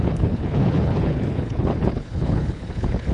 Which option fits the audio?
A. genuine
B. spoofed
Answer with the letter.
B